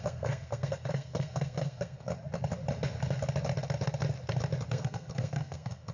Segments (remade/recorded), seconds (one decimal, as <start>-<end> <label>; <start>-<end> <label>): 0.0-2.1 remade; 2.1-4.7 recorded; 4.7-5.9 remade

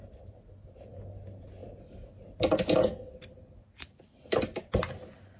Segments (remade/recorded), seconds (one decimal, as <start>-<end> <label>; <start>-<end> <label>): 0.0-5.4 recorded

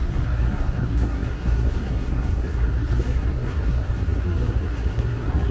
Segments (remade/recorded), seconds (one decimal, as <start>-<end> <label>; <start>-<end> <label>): 0.0-5.5 remade

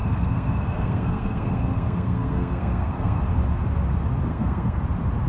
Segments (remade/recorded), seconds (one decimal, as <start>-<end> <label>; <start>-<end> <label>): 0.0-3.2 remade; 3.2-4.3 recorded; 4.3-4.8 remade; 4.8-5.3 recorded

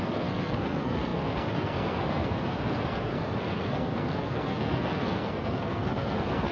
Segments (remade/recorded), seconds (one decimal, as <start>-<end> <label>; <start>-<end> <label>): 0.0-6.5 remade